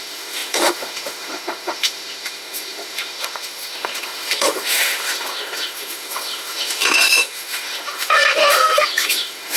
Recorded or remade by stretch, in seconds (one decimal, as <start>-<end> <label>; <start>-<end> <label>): 0.0-9.6 remade